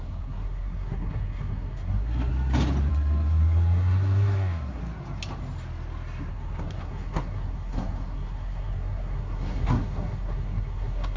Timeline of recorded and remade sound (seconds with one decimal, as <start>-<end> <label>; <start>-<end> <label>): 0.0-2.3 remade; 2.3-2.9 recorded; 2.9-4.8 remade; 4.8-6.3 recorded; 6.3-11.2 remade